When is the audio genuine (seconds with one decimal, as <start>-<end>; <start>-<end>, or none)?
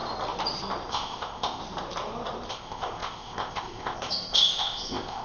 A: 0.0-0.9; 1.6-2.5